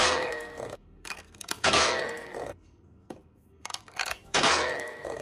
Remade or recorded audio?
remade